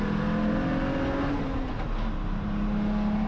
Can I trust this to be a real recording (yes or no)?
yes